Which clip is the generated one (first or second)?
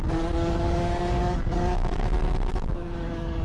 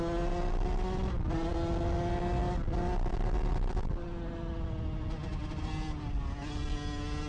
first